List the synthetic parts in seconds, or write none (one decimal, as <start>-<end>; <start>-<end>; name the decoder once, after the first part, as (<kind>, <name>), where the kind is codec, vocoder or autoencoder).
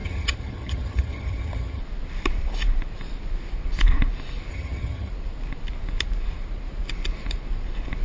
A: 0.0-1.8 (vocoder, HiFi-GAN); 4.5-5.1